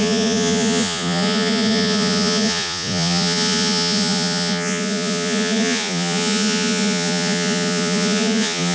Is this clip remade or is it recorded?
remade